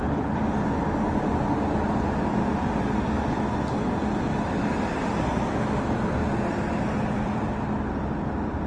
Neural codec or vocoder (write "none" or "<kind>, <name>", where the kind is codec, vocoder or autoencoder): none